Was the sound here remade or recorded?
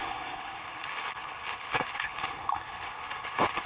remade